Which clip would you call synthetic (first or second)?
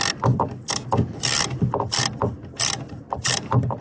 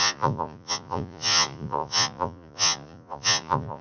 second